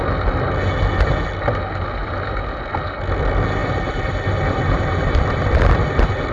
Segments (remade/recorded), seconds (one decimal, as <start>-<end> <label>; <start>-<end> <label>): 0.0-2.0 recorded; 2.0-2.8 remade; 2.8-3.6 recorded; 3.6-6.3 remade